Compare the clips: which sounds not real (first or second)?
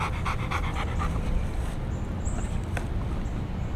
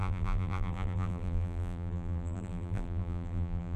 second